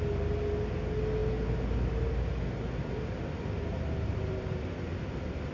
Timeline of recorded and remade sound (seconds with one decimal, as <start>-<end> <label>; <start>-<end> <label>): 0.0-5.5 recorded